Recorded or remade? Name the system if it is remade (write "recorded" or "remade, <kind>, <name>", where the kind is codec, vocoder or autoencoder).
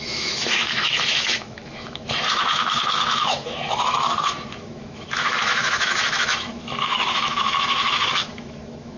remade, autoencoder, DAC-VAE